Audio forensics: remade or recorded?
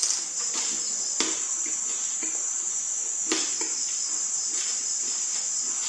recorded